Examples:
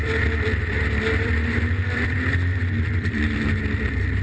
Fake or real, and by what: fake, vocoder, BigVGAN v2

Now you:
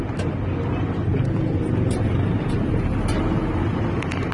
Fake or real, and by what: real